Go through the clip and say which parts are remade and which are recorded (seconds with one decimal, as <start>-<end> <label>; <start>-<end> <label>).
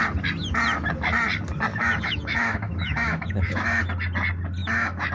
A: 0.0-1.7 recorded; 1.7-3.8 remade; 3.8-4.6 recorded; 4.6-5.1 remade